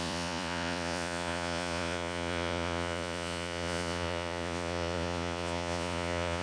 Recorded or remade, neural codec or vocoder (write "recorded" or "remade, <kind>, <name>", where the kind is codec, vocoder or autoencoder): remade, vocoder, Vocos